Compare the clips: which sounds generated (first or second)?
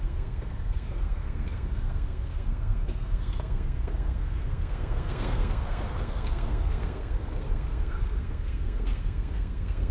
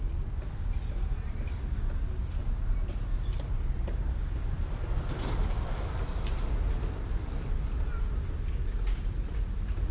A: first